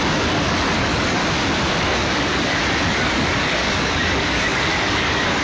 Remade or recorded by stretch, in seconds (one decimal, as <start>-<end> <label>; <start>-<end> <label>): 0.0-1.2 remade; 1.2-1.7 recorded; 1.7-5.4 remade